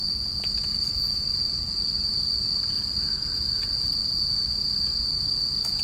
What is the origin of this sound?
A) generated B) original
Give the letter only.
B